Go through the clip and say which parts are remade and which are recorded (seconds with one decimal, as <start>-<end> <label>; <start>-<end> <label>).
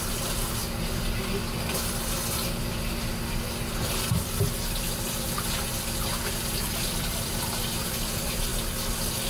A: 0.0-0.6 remade; 0.6-3.6 recorded; 3.6-9.3 remade